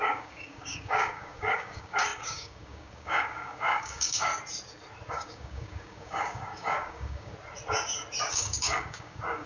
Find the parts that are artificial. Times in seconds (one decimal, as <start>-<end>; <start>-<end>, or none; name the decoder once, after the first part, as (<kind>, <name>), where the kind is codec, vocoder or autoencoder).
0.0-4.3 (codec, DAC); 5.1-7.3; 8.3-9.5